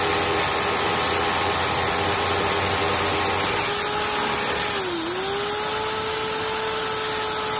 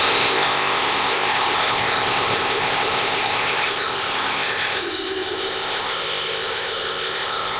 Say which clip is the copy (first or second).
second